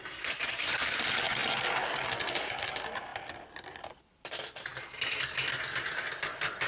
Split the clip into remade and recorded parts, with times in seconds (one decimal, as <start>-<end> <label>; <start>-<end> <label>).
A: 0.0-3.1 recorded; 3.1-4.3 remade; 4.3-6.7 recorded